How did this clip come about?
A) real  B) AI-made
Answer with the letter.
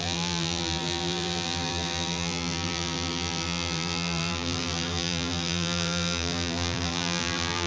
B